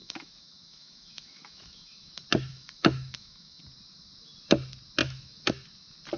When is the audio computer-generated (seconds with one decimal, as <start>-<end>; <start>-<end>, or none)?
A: 0.0-2.1; 2.5-3.6; 5.0-5.5